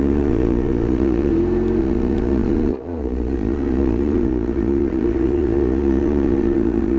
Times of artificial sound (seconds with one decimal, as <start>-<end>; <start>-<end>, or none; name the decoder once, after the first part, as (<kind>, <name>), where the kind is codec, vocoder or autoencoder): 0.0-1.3 (vocoder, Vocos); 1.8-7.0

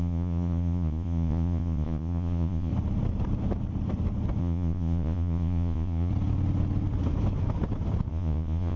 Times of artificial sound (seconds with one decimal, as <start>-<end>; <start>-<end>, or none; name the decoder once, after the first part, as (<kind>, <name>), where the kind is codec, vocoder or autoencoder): 0.0-2.7 (vocoder, Vocos); 4.4-6.1; 8.1-8.8

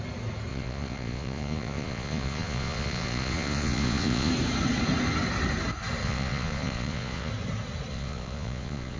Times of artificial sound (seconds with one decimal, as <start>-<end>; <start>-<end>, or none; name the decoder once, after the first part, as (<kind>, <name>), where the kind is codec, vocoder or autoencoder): 0.5-4.3 (vocoder, Vocos); 6.0-7.3; 7.9-9.0

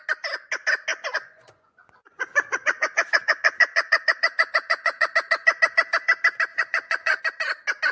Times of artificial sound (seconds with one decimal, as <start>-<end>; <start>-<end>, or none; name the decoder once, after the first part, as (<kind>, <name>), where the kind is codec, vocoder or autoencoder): 0.9-5.1 (vocoder, Vocos); 6.5-7.2

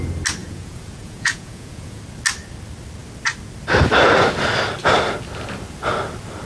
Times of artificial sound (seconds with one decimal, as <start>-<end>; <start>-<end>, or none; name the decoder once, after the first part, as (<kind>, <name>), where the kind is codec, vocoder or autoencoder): 0.4-2.0 (vocoder, Vocos)

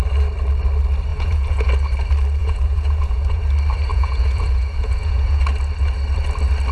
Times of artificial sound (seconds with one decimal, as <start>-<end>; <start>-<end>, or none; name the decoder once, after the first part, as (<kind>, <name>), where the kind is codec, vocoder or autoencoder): 1.1-1.7 (vocoder, Vocos); 2.4-3.4; 3.9-5.4

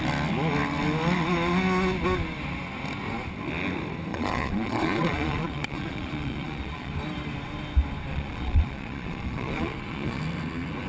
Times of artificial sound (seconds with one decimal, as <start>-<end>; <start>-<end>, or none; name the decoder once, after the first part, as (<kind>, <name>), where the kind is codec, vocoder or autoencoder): 4.1-6.9 (vocoder, Vocos); 8.1-10.2

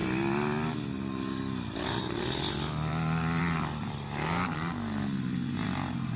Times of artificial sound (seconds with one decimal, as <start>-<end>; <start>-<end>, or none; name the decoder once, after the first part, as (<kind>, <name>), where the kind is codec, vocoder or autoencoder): none